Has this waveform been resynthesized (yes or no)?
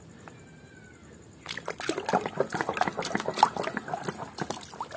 no